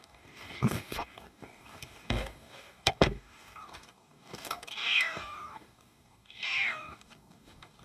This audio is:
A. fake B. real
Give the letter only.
A